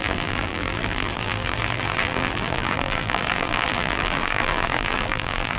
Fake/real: fake